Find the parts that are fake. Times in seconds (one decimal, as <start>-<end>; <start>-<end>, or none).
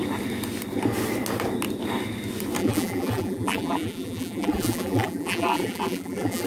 2.6-6.5